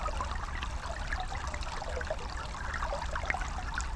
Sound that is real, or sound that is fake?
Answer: real